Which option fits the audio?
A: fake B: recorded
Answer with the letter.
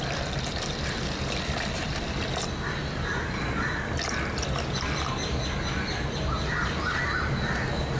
B